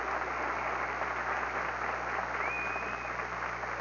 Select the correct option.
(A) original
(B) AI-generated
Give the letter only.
A